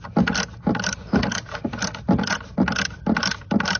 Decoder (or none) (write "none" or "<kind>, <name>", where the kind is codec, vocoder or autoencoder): none